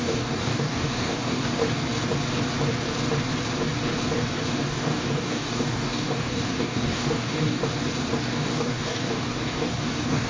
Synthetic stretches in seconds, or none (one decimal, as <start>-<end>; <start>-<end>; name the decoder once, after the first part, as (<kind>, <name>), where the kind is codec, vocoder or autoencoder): 0.0-1.6 (codec, DAC); 4.5-7.6; 8.2-10.3